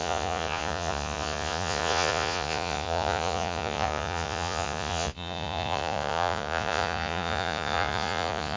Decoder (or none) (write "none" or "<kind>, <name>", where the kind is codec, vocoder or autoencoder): vocoder, Vocos